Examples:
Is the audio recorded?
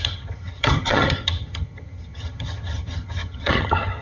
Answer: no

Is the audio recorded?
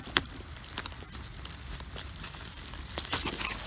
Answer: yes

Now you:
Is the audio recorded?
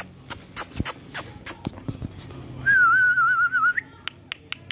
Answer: yes